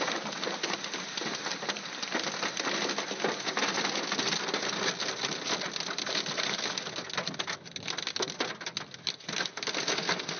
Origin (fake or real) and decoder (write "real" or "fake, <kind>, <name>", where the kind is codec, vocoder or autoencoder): real